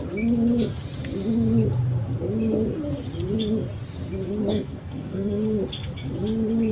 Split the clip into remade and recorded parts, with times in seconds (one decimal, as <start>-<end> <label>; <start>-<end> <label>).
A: 0.0-4.5 recorded; 4.5-5.4 remade; 5.4-6.7 recorded